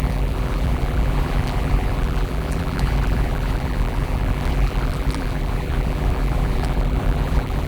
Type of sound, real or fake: fake